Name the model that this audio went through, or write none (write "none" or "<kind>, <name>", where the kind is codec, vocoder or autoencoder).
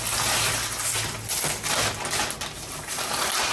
none